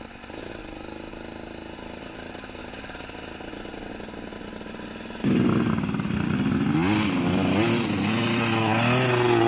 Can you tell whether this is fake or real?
real